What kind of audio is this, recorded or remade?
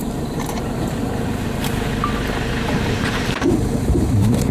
remade